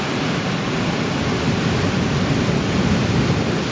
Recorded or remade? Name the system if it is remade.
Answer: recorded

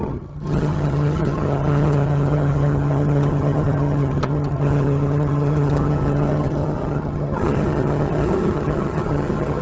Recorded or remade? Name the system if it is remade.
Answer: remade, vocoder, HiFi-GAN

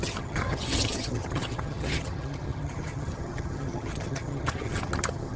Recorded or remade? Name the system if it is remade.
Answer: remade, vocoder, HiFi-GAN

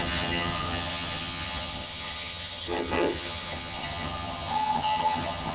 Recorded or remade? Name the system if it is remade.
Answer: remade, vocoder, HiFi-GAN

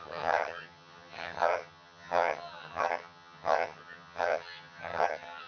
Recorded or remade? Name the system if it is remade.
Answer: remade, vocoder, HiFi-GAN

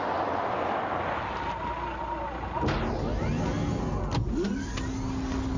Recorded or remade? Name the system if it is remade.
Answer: recorded